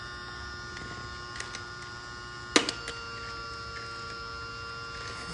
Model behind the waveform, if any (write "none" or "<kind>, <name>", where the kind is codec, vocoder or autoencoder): none